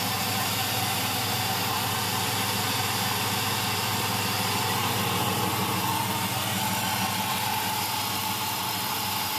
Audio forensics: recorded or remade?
recorded